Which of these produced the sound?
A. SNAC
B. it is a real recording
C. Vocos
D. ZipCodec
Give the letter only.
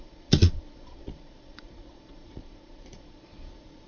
C